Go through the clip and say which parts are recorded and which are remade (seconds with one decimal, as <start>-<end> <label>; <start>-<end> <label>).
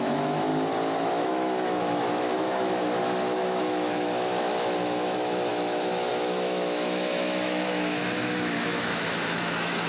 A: 0.0-0.5 remade; 0.5-1.1 recorded; 1.1-9.9 remade